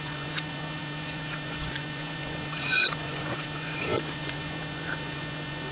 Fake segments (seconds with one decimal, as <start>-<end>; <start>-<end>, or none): 0.0-5.7